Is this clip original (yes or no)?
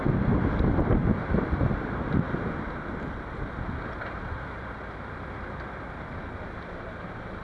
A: yes